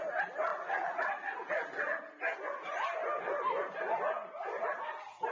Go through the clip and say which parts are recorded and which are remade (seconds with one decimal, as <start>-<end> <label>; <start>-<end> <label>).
0.0-0.5 recorded; 0.5-1.1 remade; 1.1-5.3 recorded